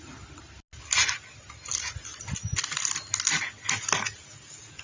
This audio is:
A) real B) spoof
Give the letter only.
A